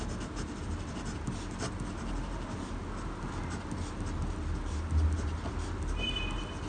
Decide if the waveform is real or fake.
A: real